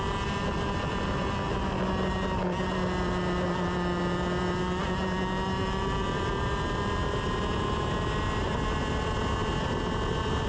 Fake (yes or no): no